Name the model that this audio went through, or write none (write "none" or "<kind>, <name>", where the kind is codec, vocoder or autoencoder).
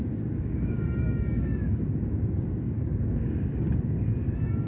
codec, DAC